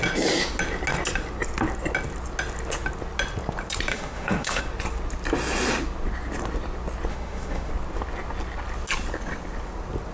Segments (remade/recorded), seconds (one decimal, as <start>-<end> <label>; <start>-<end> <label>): 0.0-3.9 recorded; 3.9-4.6 remade; 4.6-7.1 recorded; 7.1-7.7 remade; 7.7-10.1 recorded